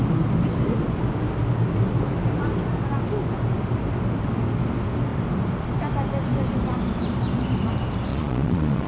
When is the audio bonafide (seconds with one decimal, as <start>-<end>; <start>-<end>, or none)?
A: 0.0-8.1